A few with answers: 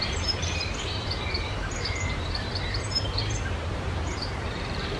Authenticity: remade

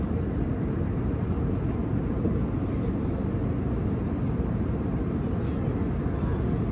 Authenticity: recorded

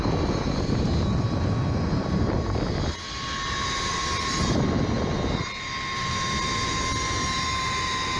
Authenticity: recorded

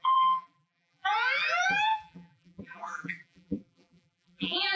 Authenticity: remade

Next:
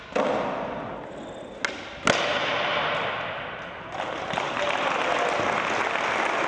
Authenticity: recorded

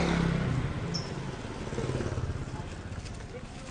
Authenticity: recorded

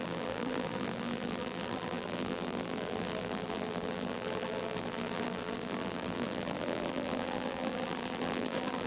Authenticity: remade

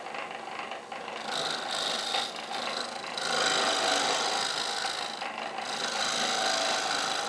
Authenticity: recorded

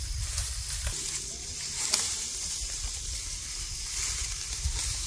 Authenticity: recorded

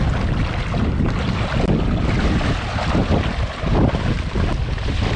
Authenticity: recorded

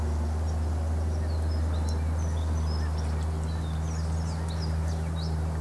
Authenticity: recorded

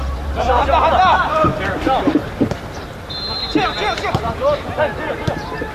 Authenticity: remade